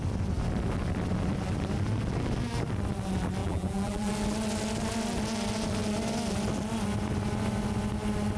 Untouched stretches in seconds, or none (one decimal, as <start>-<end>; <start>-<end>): 0.0-3.4; 4.1-8.4